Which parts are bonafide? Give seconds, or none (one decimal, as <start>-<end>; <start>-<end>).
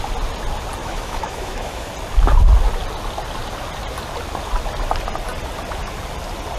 0.0-0.8; 1.9-6.6